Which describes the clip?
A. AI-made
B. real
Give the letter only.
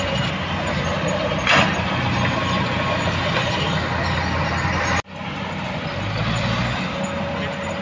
B